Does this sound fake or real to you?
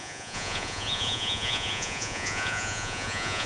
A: fake